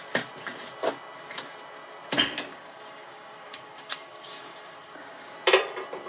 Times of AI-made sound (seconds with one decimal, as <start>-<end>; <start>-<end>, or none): 2.5-5.3